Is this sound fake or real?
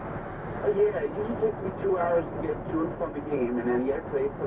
fake